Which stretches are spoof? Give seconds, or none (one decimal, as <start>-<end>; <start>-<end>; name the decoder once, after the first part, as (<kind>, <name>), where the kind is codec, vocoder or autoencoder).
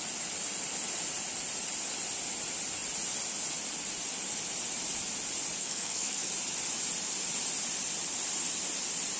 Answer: 5.6-6.3 (codec, SNAC)